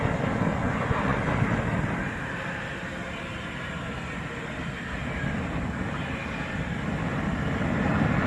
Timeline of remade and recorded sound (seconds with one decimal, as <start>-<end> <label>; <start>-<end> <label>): 0.0-0.6 recorded; 0.6-1.3 remade; 1.3-8.3 recorded